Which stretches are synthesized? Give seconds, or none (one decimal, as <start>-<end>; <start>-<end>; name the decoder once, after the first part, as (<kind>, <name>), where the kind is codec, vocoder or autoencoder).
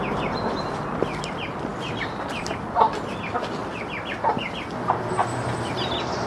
1.7-2.5 (vocoder, BigVGAN v2); 5.2-6.3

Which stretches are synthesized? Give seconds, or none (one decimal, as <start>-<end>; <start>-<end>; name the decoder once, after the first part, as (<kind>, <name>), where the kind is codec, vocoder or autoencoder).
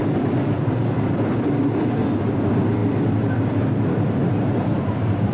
none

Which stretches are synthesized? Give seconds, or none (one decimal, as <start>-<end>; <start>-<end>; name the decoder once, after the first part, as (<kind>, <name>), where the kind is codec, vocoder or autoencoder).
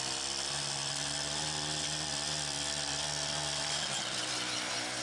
none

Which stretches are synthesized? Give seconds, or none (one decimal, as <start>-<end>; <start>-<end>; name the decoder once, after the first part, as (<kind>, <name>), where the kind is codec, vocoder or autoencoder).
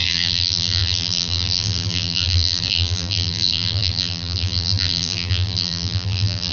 0.0-6.5 (vocoder, BigVGAN v2)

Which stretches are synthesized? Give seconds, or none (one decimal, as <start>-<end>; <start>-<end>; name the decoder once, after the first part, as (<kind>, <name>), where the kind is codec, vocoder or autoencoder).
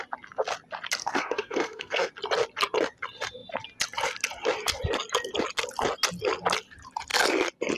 1.0-2.1 (codec, SNAC)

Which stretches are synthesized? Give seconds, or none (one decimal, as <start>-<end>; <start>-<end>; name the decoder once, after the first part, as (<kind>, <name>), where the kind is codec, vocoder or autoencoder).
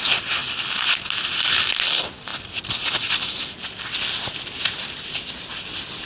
none